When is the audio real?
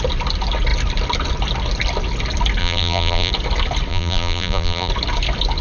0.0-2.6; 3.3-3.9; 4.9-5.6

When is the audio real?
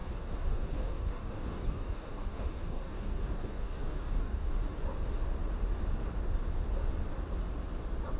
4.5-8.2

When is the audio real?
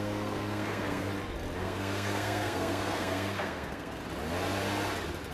1.1-1.6; 4.0-5.3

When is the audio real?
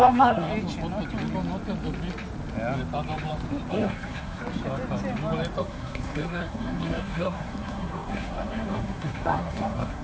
0.5-3.7; 4.4-5.6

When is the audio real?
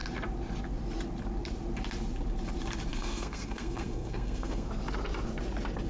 0.0-2.9; 4.7-5.9